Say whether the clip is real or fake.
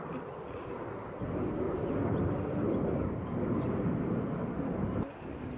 fake